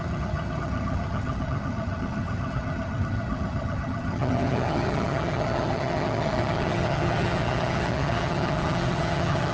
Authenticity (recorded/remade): remade